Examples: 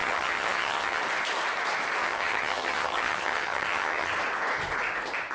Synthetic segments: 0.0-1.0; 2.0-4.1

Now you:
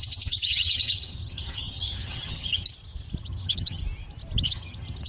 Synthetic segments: 0.0-2.7; 3.2-3.8; 4.4-5.1

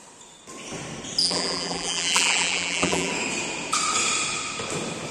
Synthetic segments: 1.2-3.1